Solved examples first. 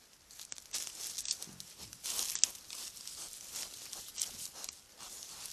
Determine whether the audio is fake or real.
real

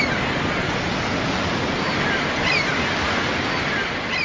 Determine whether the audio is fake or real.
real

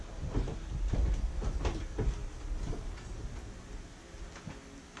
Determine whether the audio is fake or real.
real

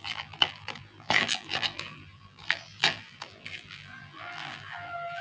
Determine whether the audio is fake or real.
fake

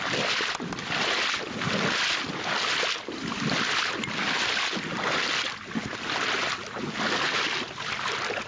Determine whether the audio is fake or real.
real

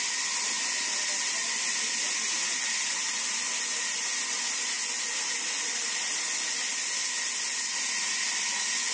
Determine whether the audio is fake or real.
real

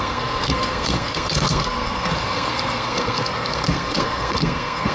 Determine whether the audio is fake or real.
fake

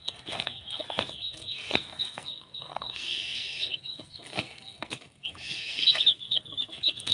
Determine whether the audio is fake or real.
fake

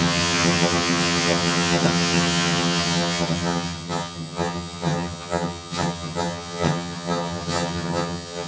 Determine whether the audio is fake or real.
fake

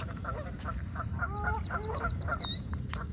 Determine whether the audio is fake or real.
fake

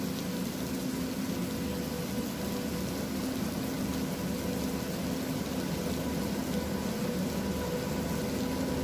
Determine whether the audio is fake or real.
real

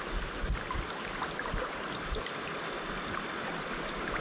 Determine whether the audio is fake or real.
real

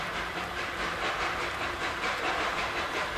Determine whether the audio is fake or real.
fake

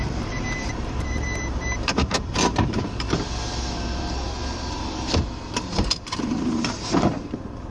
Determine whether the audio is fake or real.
fake